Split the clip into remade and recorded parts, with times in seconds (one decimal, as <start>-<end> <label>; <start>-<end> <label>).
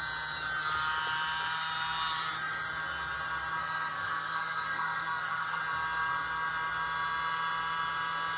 0.0-3.6 recorded; 3.6-5.6 remade; 5.6-8.4 recorded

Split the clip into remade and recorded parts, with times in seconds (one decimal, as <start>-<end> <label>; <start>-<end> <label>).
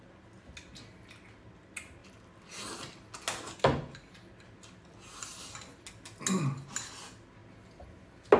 0.0-8.4 recorded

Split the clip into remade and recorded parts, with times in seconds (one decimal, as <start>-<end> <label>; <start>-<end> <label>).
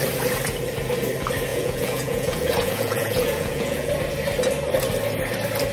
0.0-1.5 recorded; 1.5-3.9 remade; 3.9-5.7 recorded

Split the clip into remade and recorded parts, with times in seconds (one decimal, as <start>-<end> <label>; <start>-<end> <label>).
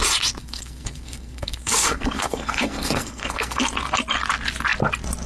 0.0-0.4 recorded; 0.4-3.6 remade; 3.6-5.3 recorded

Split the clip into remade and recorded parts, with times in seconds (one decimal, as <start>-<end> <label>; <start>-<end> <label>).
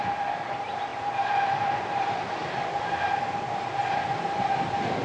0.0-5.0 recorded